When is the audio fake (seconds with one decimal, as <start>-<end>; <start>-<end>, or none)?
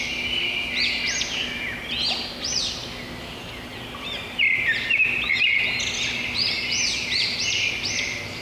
none